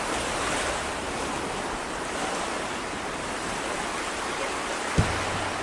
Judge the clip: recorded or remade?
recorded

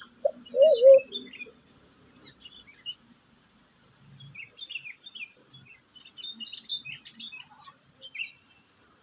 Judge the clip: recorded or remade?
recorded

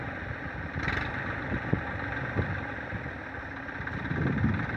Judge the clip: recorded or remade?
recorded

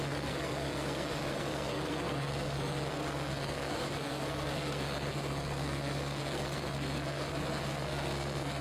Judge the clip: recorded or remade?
remade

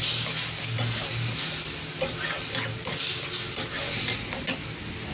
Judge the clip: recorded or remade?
recorded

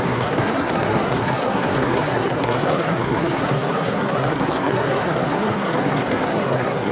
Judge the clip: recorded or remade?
remade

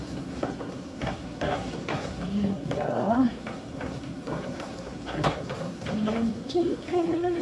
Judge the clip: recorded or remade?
remade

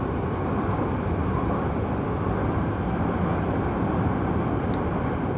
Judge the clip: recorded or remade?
recorded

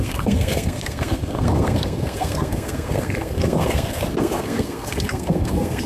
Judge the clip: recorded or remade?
remade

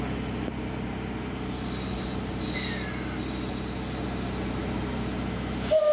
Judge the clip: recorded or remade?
recorded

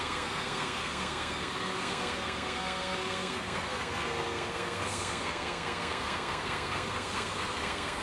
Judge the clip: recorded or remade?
remade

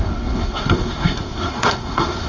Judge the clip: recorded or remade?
remade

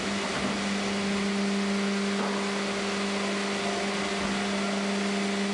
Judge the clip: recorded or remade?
recorded